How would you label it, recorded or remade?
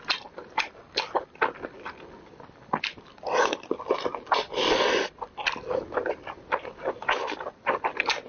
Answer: recorded